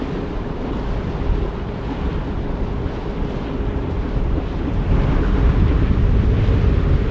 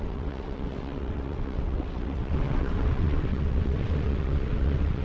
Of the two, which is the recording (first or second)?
first